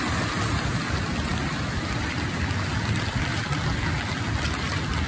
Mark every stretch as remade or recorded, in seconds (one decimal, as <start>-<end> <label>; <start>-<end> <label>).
0.0-5.1 recorded